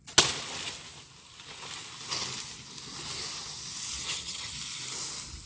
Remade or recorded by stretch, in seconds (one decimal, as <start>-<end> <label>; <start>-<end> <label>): 0.0-4.0 recorded; 4.0-4.5 remade; 4.5-5.5 recorded